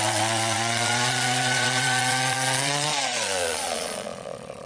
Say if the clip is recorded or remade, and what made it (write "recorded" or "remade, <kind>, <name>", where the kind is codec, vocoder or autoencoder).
remade, vocoder, Vocos